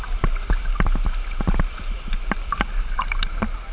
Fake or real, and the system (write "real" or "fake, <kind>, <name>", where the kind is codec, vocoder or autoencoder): real